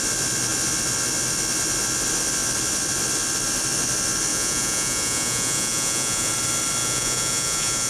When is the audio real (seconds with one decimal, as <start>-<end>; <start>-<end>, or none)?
0.0-4.3; 6.3-6.8